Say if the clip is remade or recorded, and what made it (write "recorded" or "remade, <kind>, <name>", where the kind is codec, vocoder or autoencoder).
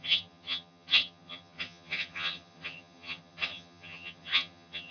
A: remade, vocoder, HiFi-GAN